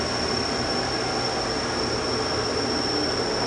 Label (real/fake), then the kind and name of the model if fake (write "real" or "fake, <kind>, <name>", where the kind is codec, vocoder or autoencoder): real